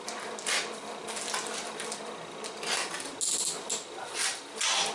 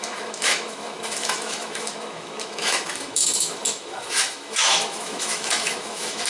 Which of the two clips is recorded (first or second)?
first